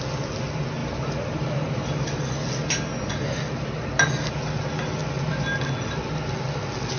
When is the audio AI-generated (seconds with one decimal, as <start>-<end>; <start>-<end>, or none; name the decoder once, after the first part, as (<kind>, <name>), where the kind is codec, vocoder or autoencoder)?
0.8-2.3 (vocoder, BigVGAN v2)